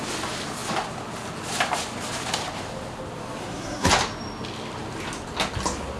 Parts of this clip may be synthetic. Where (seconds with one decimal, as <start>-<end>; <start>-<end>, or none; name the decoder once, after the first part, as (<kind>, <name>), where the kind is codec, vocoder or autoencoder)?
3.4-3.9 (codec, SNAC)